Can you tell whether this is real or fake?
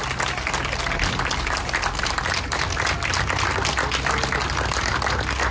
real